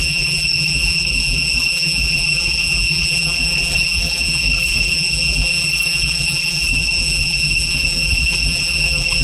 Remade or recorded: remade